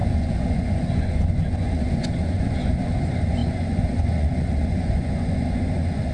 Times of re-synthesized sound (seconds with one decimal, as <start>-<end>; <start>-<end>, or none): 0.0-6.1